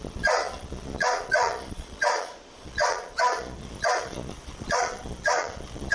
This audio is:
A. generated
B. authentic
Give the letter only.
A